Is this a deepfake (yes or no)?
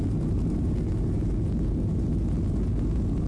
no